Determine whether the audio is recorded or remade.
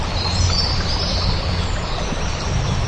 recorded